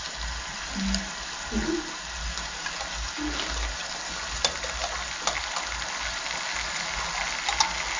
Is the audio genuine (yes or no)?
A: yes